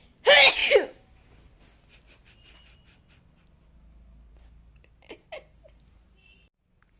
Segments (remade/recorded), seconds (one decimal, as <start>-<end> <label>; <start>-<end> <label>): 0.0-7.0 recorded